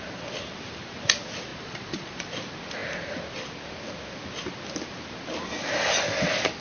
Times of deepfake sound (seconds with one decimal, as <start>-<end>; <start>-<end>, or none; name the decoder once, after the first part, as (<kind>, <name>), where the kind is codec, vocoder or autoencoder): 1.5-2.3 (vocoder, Vocos)